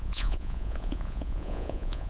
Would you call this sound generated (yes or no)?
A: yes